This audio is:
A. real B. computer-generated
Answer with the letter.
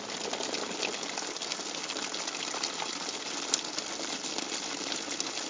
A